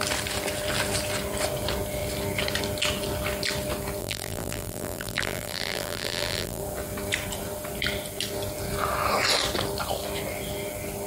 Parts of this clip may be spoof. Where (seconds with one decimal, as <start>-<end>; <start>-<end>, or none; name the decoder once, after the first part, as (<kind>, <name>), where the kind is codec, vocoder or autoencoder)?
4.0-6.6 (vocoder, BigVGAN v2)